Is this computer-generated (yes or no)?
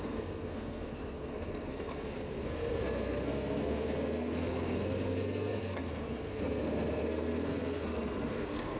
yes